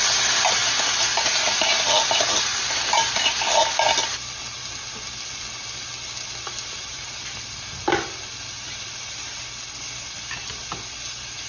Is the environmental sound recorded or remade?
recorded